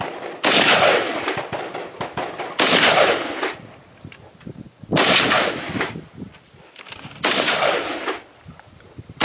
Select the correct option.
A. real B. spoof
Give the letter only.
B